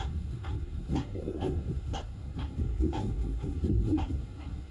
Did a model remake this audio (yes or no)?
yes